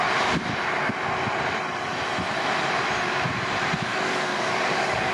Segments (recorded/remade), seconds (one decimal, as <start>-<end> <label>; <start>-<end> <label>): 0.0-3.9 recorded; 3.9-5.1 remade